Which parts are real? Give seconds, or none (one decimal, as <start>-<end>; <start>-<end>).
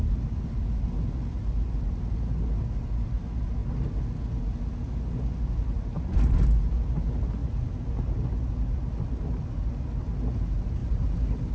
0.0-7.4; 7.9-10.8